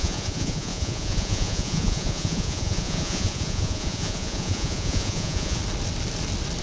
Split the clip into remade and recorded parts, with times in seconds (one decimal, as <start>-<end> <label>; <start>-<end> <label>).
0.0-5.6 remade; 5.6-6.6 recorded